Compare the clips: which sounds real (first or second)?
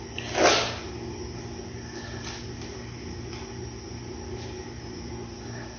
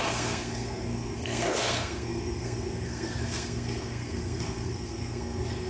first